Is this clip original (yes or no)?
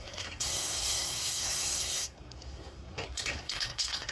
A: no